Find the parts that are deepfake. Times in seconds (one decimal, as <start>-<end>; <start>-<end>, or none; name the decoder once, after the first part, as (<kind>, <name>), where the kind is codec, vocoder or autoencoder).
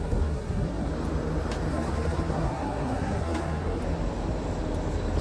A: 0.0-0.9 (codec, SNAC); 1.7-3.8